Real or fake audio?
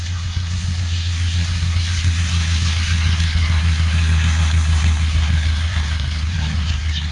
fake